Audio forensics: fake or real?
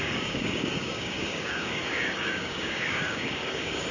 fake